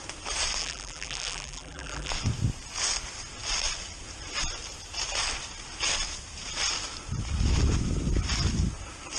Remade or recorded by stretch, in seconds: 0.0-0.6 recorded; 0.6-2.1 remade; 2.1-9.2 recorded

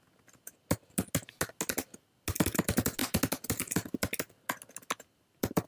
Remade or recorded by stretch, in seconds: 0.0-5.7 recorded